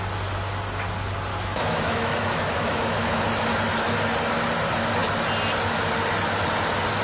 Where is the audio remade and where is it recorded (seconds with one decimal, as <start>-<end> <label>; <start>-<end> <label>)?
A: 0.0-1.3 recorded; 1.3-3.2 remade; 3.2-7.0 recorded